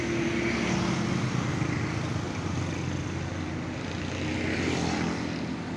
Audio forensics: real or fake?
real